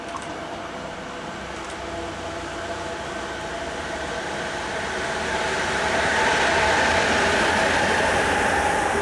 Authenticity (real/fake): real